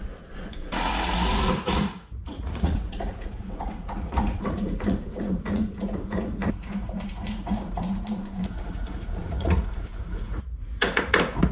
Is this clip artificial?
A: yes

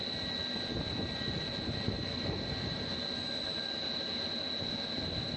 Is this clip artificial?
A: no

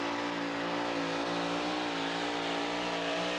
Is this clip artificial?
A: no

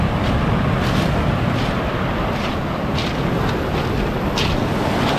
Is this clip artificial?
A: no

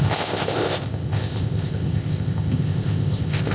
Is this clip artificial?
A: yes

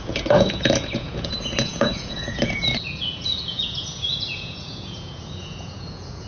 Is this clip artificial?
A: yes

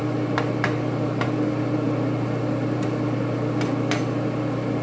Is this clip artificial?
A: no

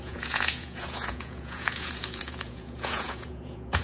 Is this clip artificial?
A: yes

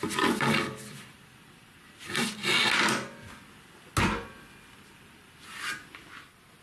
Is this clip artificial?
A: no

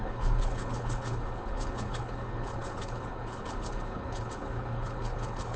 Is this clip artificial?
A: yes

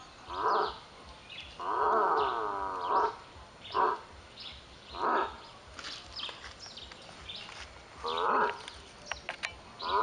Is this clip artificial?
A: no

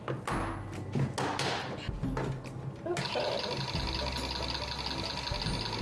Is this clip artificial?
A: no